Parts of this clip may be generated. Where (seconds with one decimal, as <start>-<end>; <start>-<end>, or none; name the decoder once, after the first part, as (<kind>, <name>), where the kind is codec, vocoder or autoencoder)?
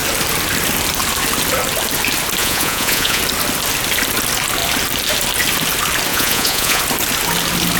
2.4-3.2 (vocoder, Vocos); 6.1-6.8